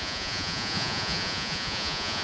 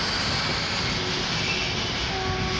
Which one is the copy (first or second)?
first